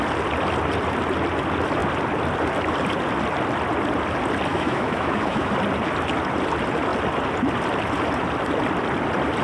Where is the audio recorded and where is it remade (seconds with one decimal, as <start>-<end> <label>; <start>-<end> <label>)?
0.0-4.5 recorded; 4.5-5.5 remade; 5.5-9.4 recorded